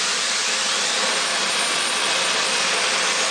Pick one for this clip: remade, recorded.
recorded